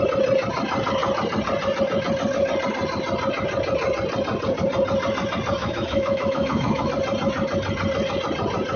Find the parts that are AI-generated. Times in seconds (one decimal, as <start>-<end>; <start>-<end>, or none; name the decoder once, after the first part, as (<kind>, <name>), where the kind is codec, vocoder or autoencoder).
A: 5.6-6.9 (autoencoder, DAC-VAE)